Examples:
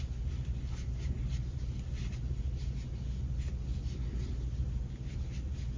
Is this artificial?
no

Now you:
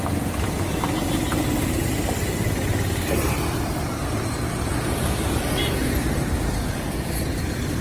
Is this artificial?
no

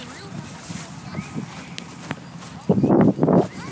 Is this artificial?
no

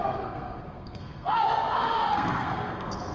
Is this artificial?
yes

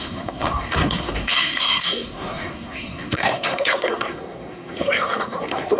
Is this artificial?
yes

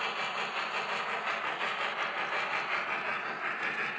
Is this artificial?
no